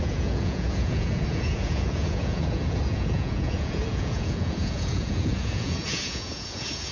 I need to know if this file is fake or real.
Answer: fake